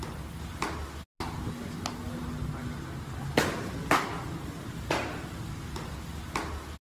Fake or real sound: real